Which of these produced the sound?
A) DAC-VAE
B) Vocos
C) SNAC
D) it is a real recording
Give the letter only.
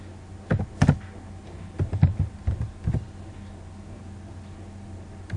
D